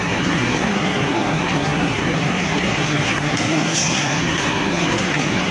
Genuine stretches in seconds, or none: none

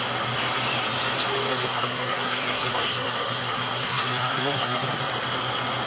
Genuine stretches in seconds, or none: 0.0-1.5; 5.0-5.9

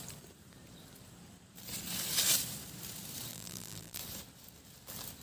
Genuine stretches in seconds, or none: 0.0-3.3; 4.0-5.2